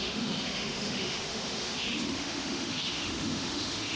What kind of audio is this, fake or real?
fake